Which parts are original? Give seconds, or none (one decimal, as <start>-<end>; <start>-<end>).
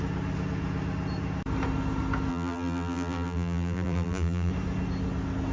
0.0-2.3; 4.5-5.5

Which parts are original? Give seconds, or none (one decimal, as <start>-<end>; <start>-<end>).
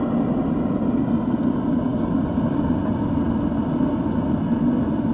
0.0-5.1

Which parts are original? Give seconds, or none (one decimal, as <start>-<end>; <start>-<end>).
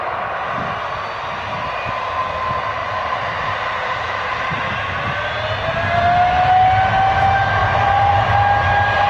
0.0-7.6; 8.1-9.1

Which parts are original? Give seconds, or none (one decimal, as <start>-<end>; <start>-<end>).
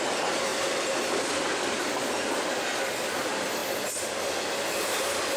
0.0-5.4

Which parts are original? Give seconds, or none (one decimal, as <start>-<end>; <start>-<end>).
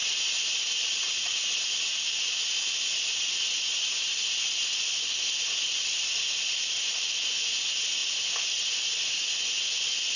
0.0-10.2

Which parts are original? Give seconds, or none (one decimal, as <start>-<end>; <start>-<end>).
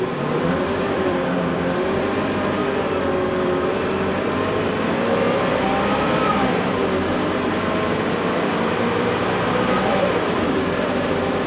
2.6-3.3; 6.8-8.1